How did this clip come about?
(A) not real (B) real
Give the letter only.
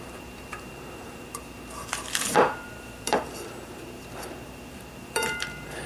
A